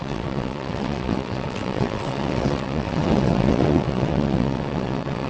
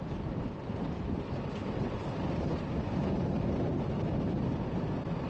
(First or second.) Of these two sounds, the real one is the second